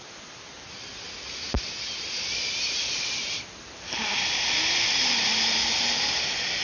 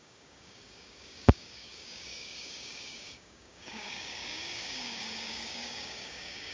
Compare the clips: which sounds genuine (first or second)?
first